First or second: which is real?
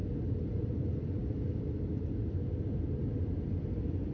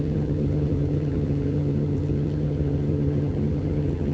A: first